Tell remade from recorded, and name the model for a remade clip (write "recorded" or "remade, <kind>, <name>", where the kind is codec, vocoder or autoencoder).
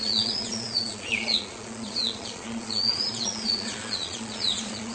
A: remade, vocoder, Vocos